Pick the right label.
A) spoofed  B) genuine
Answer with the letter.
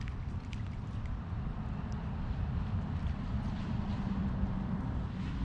A